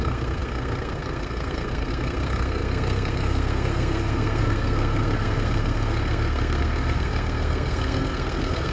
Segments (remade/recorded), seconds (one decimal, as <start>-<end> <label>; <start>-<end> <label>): 0.0-8.7 remade

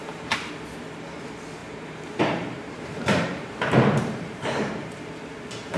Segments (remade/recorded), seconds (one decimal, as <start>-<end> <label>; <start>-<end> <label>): 0.0-0.5 remade; 0.5-1.6 recorded; 1.6-5.1 remade; 5.1-5.8 recorded

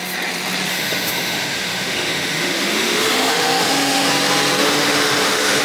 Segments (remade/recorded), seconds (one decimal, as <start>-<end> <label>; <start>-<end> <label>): 0.0-0.7 recorded; 0.7-4.1 remade; 4.1-4.6 recorded; 4.6-5.6 remade